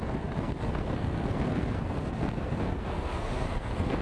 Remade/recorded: remade